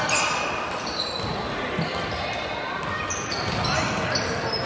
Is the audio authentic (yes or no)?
yes